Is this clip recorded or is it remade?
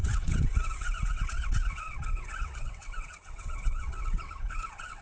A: remade